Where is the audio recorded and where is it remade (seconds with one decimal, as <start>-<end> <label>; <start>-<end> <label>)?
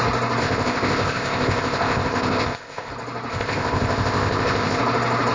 0.0-0.4 recorded; 0.4-2.9 remade; 2.9-3.3 recorded; 3.3-4.8 remade; 4.8-5.3 recorded